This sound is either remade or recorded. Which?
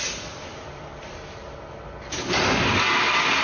recorded